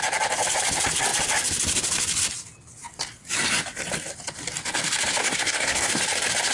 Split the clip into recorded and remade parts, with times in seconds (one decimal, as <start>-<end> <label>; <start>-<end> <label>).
0.0-5.2 recorded; 5.2-6.0 remade; 6.0-6.5 recorded